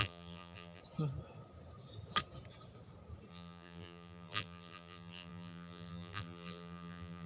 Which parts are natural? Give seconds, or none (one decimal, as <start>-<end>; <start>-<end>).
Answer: 0.8-3.3